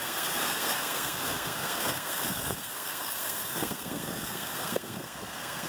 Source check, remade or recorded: remade